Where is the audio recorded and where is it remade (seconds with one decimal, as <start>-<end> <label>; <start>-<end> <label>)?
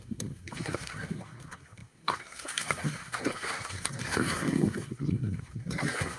0.0-6.2 remade